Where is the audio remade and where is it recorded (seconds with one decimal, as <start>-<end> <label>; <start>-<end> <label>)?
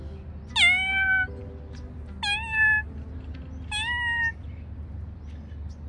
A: 0.0-5.9 recorded